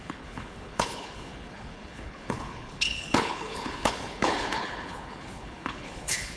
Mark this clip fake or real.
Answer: fake